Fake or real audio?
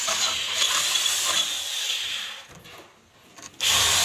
real